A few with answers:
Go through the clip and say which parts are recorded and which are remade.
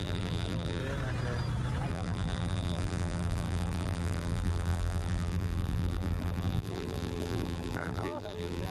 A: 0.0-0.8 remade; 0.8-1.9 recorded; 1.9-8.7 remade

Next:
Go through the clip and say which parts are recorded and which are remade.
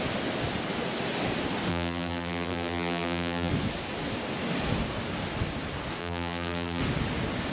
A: 0.0-1.7 recorded; 1.7-3.5 remade; 3.5-6.0 recorded; 6.0-6.8 remade; 6.8-7.5 recorded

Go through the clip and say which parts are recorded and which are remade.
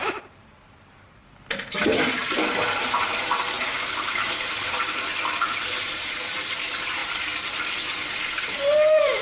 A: 0.0-1.2 remade; 1.2-3.0 recorded; 3.0-9.2 remade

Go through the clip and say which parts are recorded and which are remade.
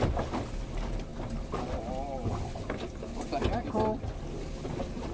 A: 0.0-5.1 recorded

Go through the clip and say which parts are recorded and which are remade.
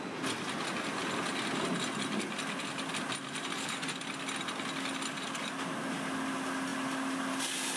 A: 0.0-7.8 recorded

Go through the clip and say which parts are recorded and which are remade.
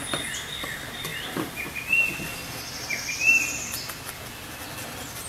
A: 0.0-5.3 recorded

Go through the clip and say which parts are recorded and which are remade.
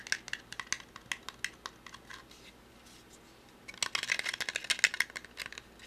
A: 0.0-5.9 recorded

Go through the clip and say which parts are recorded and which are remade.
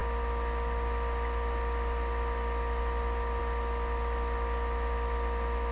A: 0.0-5.7 recorded